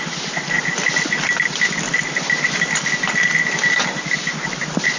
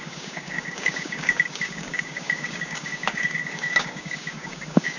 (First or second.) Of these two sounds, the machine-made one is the second